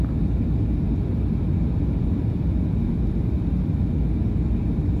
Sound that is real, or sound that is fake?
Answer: real